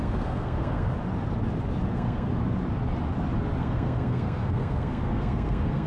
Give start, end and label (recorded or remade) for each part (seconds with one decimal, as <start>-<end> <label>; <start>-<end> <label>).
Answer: 0.0-0.9 remade; 0.9-1.9 recorded; 1.9-2.3 remade; 2.3-3.6 recorded; 3.6-5.9 remade